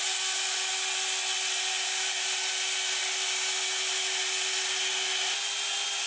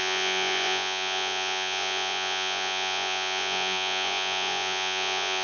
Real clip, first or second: first